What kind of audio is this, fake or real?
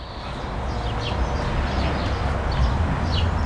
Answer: real